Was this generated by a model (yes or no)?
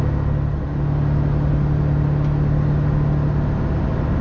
no